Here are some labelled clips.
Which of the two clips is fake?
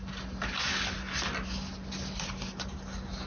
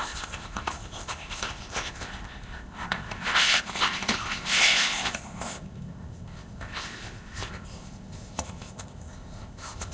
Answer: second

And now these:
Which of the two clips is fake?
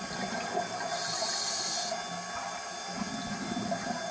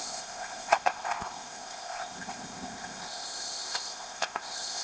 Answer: second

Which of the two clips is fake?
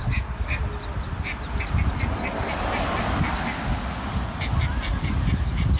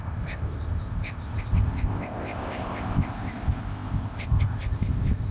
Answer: second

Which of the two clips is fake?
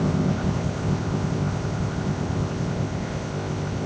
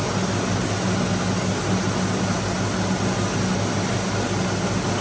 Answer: first